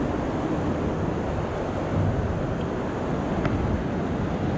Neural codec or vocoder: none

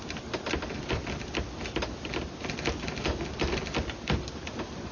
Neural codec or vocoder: none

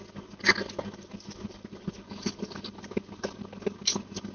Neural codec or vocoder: none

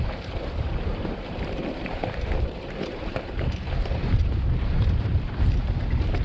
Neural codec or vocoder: vocoder, BigVGAN v2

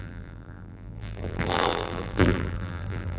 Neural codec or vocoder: vocoder, BigVGAN v2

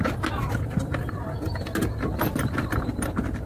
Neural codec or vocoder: none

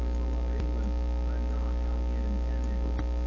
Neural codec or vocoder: none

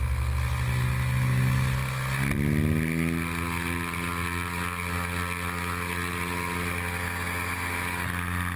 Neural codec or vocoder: none